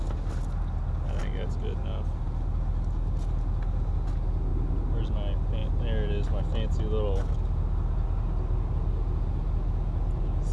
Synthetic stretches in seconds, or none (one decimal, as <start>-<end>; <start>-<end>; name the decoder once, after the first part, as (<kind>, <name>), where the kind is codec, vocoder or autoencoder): none